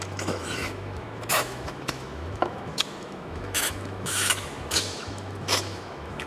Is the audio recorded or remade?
remade